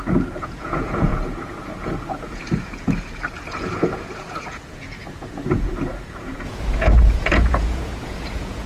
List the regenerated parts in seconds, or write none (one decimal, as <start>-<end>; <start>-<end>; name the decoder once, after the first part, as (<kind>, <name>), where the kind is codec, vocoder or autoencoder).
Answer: 0.0-8.7 (vocoder, Vocos)